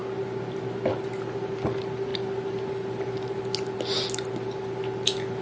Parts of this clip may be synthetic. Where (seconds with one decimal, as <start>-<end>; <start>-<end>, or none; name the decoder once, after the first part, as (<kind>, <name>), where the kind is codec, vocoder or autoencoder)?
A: none